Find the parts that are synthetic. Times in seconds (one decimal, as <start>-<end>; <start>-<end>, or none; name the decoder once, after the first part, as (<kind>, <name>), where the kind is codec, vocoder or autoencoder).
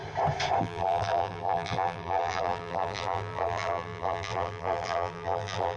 0.6-5.8 (vocoder, BigVGAN v2)